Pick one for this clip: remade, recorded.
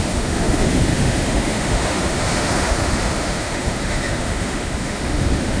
remade